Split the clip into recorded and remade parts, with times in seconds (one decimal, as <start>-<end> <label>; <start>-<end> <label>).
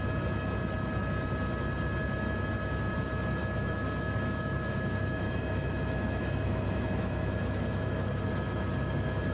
0.0-3.4 recorded; 3.4-8.2 remade; 8.2-9.3 recorded